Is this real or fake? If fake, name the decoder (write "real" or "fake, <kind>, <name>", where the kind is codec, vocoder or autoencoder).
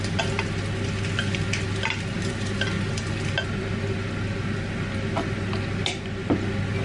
real